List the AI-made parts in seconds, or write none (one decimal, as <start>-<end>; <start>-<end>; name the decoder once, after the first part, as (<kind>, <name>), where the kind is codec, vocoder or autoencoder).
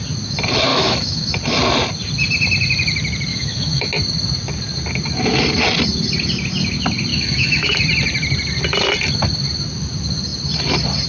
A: 0.7-1.3 (autoencoder, DAC-VAE); 3.3-3.9; 7.1-7.8